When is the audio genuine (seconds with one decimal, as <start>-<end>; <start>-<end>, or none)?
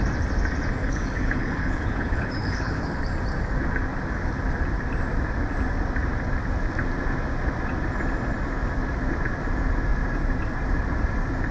0.0-0.8; 3.0-11.5